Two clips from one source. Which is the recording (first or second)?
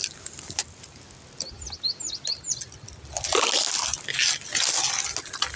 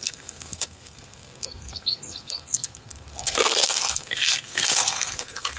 first